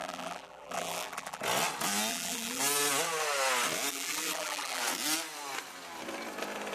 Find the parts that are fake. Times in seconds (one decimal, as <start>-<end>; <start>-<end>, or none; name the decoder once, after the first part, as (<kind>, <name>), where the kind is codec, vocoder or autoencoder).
0.0-1.4 (vocoder, BigVGAN v2); 2.1-2.6; 3.9-4.8